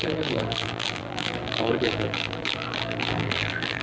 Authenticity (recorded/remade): remade